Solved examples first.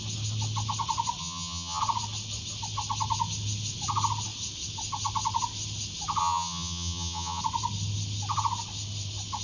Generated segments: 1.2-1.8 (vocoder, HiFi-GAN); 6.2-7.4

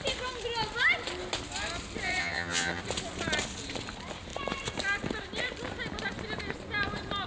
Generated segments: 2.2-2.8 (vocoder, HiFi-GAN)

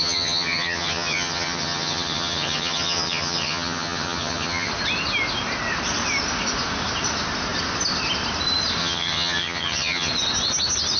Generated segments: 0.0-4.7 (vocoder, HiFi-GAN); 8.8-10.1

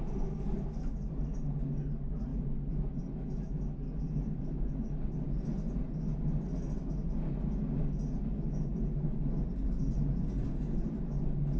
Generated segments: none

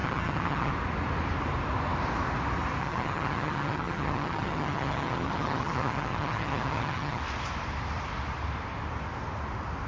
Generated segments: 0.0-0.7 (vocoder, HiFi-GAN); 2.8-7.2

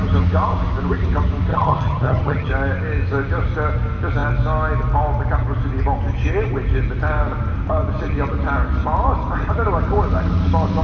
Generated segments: 1.5-2.5 (vocoder, HiFi-GAN)

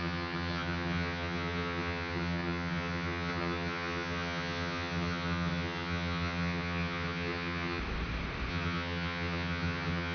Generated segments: 0.0-7.8 (vocoder, HiFi-GAN); 8.5-10.1

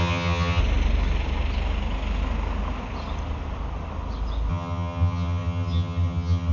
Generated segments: 0.0-0.6 (vocoder, HiFi-GAN); 4.5-6.5